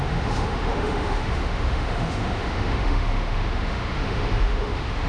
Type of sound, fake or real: fake